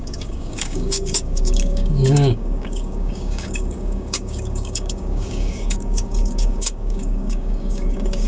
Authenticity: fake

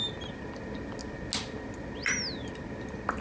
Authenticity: real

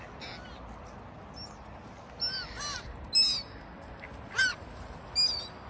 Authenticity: real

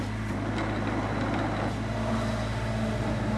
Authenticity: real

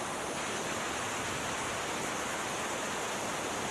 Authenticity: real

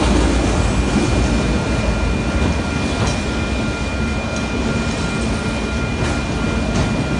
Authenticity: real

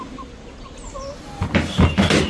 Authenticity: real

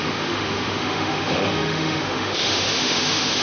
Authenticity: fake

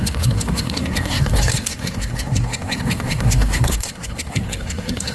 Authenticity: fake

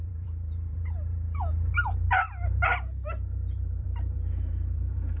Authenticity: fake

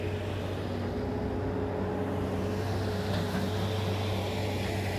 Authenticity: real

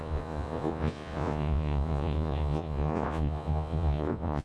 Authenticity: fake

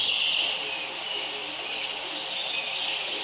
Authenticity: real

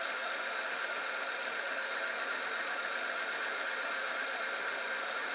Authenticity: fake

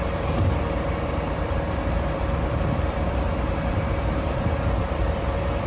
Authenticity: fake